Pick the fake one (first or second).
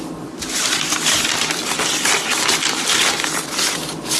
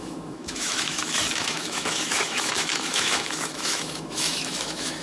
second